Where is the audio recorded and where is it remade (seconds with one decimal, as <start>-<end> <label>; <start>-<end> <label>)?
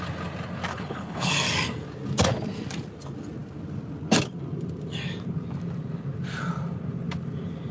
0.0-0.7 recorded; 0.7-1.3 remade; 1.3-7.7 recorded